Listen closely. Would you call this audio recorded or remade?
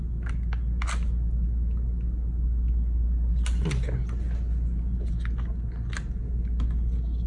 recorded